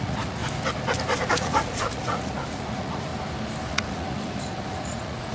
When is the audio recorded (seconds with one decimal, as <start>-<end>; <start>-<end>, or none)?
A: 0.4-1.3; 3.1-3.7